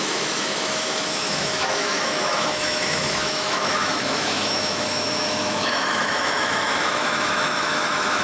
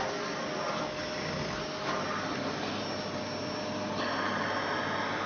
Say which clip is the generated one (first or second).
first